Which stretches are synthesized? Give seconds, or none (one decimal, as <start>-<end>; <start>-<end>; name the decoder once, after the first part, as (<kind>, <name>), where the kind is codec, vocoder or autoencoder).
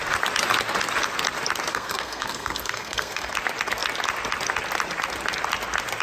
1.7-3.3 (codec, SNAC)